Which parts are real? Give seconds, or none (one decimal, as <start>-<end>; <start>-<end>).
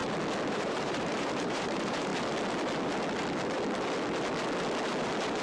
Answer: 0.0-0.5; 2.1-5.4